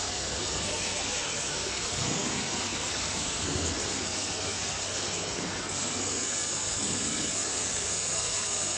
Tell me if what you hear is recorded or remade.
remade